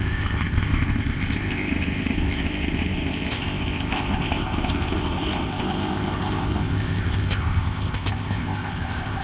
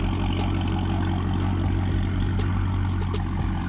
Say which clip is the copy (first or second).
first